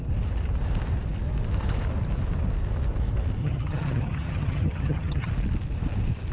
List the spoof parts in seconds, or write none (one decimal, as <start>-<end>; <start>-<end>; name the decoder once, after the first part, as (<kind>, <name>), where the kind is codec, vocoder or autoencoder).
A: 3.4-5.3 (vocoder, HiFi-GAN)